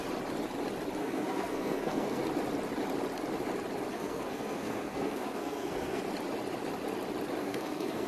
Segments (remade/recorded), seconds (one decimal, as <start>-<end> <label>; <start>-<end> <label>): 0.0-1.0 recorded; 1.0-2.2 remade; 2.2-3.9 recorded; 3.9-6.0 remade; 6.0-7.4 recorded; 7.4-8.1 remade